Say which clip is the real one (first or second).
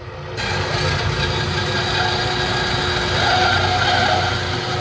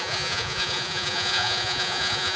first